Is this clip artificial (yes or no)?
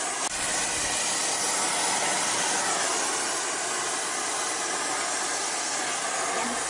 no